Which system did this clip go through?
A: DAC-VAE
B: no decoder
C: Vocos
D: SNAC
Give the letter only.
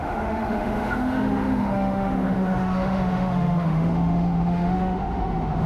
A